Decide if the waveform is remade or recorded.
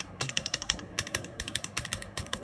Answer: remade